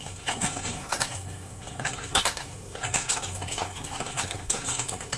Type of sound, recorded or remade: remade